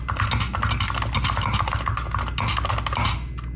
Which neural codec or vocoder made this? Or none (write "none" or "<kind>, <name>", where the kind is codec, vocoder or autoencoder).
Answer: none